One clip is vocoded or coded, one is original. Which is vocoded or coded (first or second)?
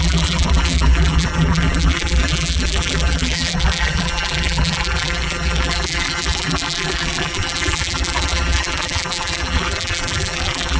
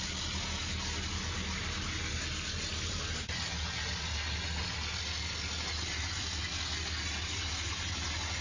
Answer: first